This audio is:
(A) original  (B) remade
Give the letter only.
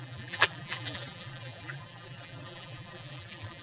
B